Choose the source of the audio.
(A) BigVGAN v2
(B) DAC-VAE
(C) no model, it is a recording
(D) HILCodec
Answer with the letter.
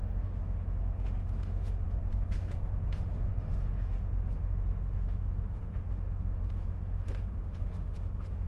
B